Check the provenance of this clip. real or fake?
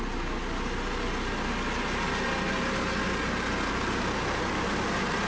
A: real